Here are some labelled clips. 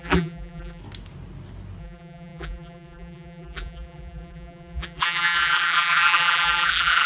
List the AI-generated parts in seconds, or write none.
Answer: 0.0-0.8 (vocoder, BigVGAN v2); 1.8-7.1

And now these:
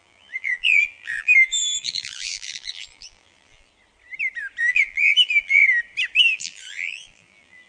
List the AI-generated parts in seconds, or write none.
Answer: 0.0-3.7 (vocoder, BigVGAN v2); 4.6-5.6; 6.2-7.7

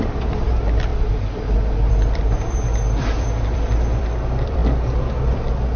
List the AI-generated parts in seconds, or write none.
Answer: 0.0-4.6 (vocoder, BigVGAN v2); 5.2-5.8

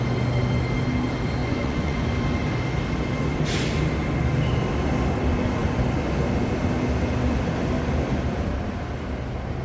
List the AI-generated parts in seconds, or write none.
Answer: 1.4-2.2 (vocoder, Vocos)

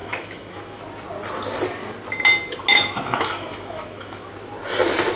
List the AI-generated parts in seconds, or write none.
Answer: 0.0-0.8 (autoencoder, DAC-VAE); 2.7-4.3

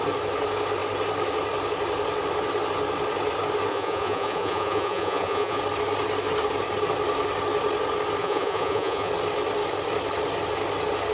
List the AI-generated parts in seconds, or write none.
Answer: 3.7-5.6 (vocoder, Vocos); 8.2-9.1

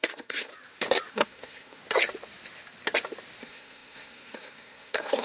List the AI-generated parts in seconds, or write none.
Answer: 0.0-0.5 (codec, SNAC); 1.1-1.8; 3.4-5.2